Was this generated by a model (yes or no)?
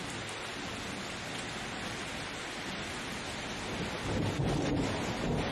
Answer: no